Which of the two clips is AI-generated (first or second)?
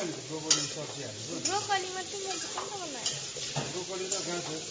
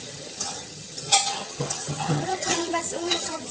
second